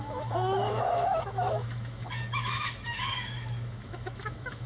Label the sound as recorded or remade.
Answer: remade